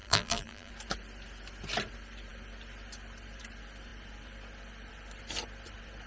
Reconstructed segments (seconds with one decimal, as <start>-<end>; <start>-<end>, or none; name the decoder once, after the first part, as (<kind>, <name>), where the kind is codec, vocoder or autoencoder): 0.0-0.7 (vocoder, BigVGAN v2)